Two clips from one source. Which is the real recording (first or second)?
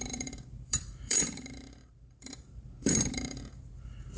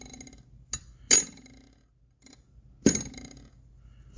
second